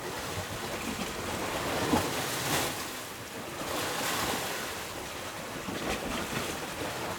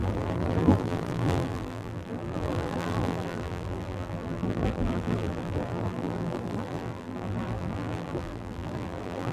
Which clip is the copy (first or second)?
second